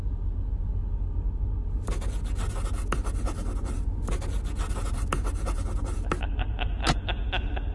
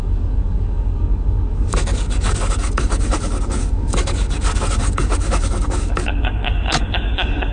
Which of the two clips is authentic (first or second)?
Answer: first